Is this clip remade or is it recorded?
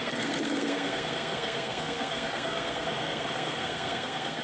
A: remade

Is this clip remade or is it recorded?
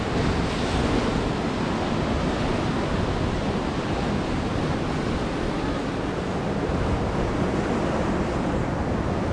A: recorded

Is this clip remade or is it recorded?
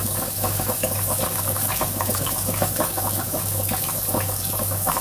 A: remade